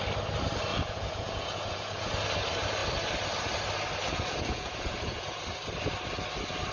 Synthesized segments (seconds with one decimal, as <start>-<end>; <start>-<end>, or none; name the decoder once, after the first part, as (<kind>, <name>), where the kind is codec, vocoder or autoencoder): 0.7-2.1 (vocoder, Vocos); 4.0-5.4

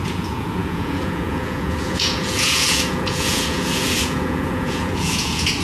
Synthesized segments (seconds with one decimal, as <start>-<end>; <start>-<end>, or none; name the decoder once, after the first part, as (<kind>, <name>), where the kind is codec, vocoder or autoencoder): 0.0-5.6 (vocoder, Vocos)

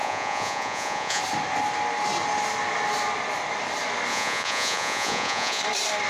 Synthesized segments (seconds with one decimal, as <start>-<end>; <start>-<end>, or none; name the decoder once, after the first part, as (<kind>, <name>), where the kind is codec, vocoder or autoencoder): 0.0-1.2 (vocoder, Vocos); 4.1-5.6

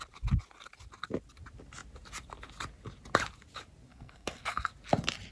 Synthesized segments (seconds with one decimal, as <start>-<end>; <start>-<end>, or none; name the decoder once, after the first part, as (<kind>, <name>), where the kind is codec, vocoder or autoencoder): 3.9-4.7 (codec, SNAC)